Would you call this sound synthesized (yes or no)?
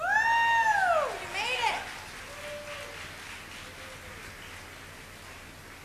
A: no